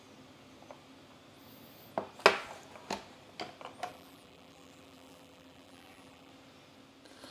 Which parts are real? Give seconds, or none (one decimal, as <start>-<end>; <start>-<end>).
0.0-3.9; 6.3-7.3